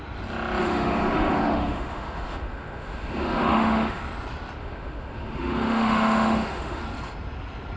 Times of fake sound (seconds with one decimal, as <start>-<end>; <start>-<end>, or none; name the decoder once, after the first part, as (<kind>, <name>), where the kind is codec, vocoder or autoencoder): 0.6-4.0 (autoencoder, DAC-VAE); 4.6-6.8